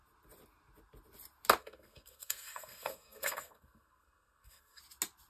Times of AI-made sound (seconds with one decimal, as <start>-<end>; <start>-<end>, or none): 1.6-4.8